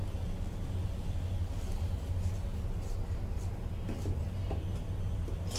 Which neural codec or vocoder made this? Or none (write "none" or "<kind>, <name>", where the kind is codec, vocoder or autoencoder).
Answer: none